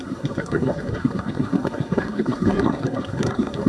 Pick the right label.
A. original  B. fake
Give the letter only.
B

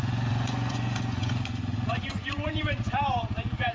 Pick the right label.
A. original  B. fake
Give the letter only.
B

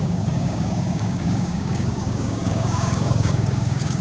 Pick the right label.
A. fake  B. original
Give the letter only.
A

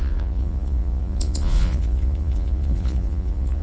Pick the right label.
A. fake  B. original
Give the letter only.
A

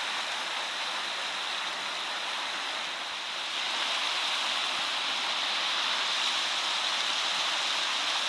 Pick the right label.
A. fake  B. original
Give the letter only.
B